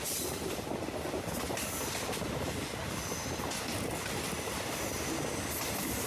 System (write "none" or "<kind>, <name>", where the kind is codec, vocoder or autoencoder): none